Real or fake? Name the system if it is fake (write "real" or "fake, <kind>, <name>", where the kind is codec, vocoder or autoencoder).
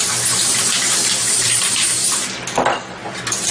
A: real